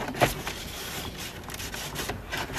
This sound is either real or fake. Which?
real